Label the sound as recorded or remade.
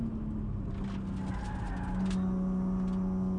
recorded